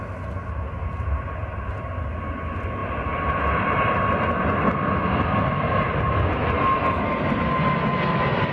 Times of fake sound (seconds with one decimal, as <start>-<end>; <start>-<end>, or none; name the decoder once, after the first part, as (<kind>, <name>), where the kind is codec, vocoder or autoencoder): none